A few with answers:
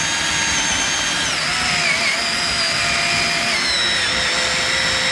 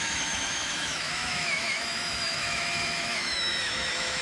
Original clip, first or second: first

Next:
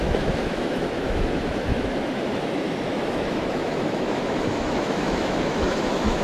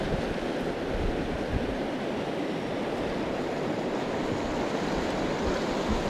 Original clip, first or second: second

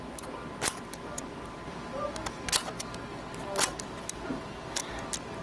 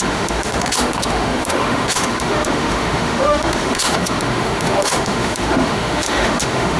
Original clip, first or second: first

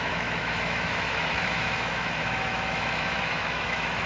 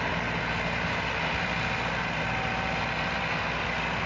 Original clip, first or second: second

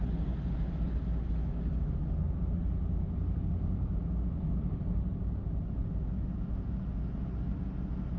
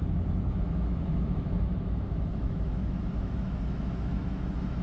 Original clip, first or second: first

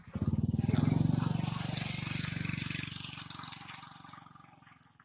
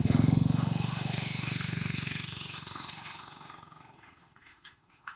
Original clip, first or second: first